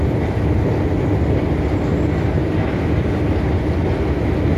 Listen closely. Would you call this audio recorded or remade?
recorded